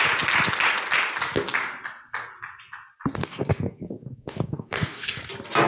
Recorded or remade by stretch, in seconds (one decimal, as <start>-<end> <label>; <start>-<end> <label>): 0.0-3.2 recorded; 3.2-5.2 remade; 5.2-5.7 recorded